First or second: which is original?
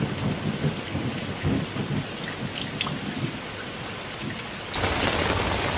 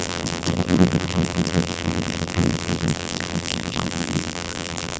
first